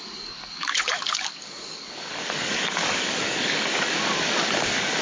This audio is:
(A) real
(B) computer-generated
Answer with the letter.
B